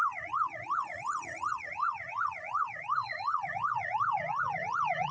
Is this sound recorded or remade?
remade